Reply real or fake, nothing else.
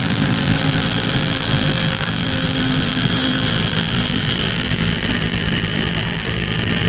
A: fake